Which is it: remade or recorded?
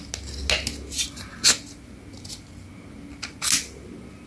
recorded